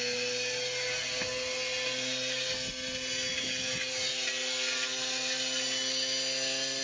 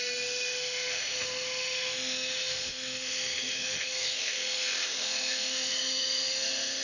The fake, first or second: second